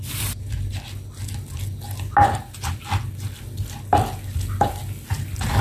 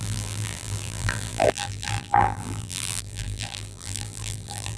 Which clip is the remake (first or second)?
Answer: second